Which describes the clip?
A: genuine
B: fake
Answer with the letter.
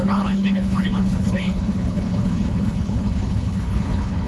B